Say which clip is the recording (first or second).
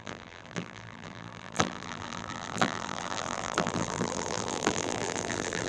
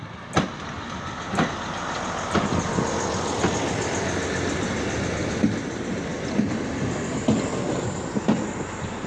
second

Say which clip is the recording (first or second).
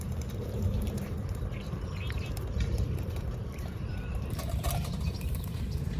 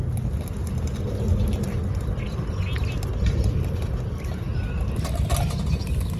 second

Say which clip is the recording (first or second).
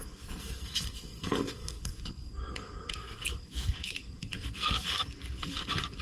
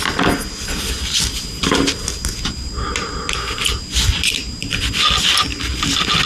second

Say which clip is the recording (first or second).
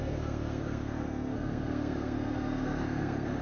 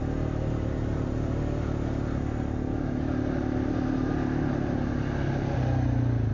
second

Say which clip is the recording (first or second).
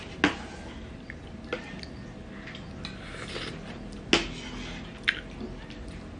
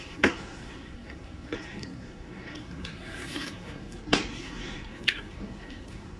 first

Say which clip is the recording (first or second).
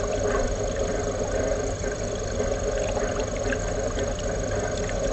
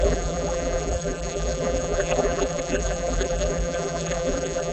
first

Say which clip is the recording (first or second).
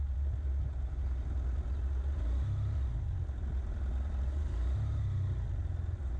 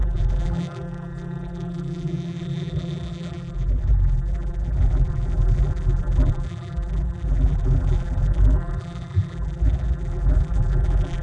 first